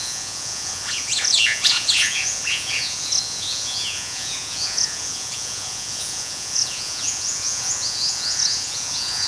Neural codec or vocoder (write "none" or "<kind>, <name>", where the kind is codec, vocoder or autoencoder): vocoder, Vocos